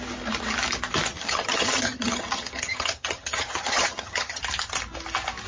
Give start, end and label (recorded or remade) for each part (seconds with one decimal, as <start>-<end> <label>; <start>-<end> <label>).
0.0-1.1 recorded; 1.1-4.4 remade; 4.4-5.5 recorded